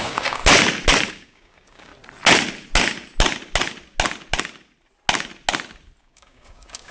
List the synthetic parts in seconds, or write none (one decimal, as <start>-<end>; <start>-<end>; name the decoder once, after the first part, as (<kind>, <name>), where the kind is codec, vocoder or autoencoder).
0.0-0.4 (codec, DAC); 1.1-1.9; 6.0-6.9